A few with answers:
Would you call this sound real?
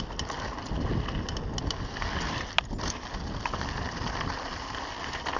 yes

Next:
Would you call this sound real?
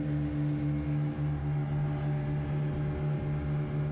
yes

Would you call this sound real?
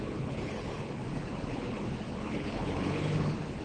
no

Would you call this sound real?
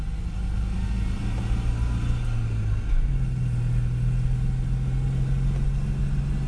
yes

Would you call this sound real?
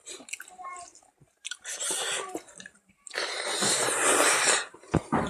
no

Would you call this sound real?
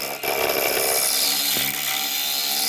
yes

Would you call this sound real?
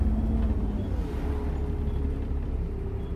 yes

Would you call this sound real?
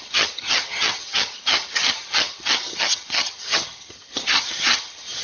no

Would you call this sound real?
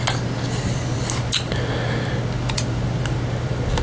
yes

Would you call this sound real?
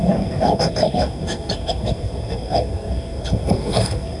no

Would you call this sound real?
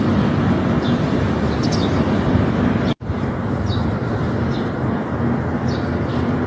yes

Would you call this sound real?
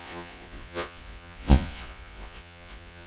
no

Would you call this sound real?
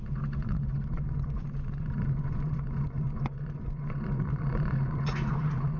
no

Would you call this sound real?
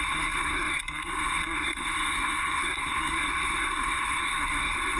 no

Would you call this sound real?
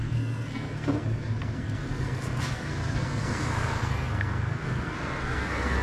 no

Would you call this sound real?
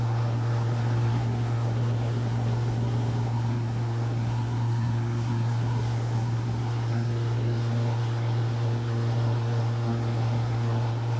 no